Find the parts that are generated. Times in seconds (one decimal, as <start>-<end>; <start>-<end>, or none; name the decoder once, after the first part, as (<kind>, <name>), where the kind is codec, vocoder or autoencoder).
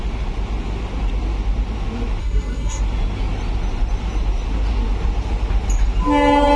2.2-2.8 (codec, SNAC)